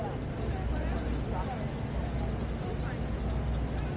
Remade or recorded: recorded